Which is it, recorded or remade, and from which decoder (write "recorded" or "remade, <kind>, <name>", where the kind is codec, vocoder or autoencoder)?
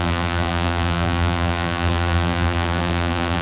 remade, vocoder, BigVGAN v2